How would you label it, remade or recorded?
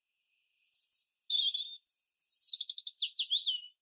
recorded